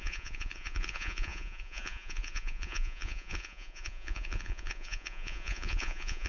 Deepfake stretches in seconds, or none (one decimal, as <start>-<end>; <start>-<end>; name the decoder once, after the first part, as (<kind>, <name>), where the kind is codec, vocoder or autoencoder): 0.0-6.3 (vocoder, Vocos)